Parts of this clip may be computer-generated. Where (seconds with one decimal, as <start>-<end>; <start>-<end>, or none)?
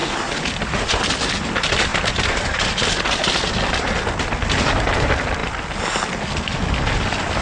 none